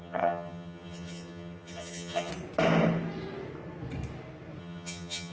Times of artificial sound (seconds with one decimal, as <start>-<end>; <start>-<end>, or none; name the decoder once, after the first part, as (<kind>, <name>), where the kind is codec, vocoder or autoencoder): 0.0-2.3 (vocoder, HiFi-GAN); 4.6-5.3

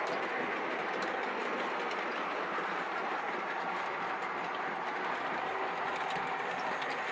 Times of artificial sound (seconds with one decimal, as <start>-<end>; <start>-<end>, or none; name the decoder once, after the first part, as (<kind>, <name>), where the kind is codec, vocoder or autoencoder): none

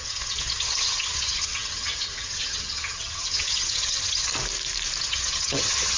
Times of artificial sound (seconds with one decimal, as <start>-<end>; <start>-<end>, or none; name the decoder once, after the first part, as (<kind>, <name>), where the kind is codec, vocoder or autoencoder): 0.0-4.3 (vocoder, HiFi-GAN); 5.0-6.0

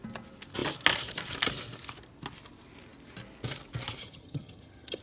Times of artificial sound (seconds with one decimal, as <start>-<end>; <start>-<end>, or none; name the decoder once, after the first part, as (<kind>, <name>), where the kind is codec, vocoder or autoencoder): 4.0-5.0 (vocoder, HiFi-GAN)